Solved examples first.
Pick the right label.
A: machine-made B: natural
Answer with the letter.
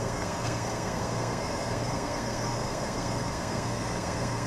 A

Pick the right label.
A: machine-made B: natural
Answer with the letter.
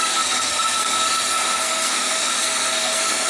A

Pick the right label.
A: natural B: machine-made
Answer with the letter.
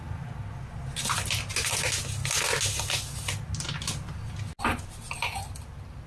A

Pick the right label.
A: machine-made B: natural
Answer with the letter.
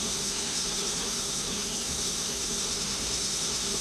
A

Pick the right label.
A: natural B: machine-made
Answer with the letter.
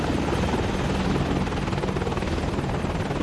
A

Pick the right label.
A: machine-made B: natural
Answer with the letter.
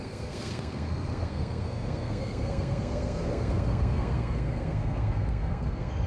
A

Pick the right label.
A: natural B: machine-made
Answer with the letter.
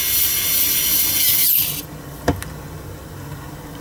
A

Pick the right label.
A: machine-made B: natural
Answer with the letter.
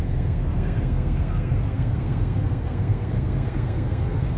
A